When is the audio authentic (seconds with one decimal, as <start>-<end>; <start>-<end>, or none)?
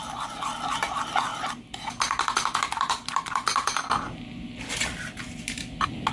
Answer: 0.0-6.1